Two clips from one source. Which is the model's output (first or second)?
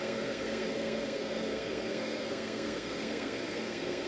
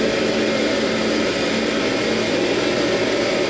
first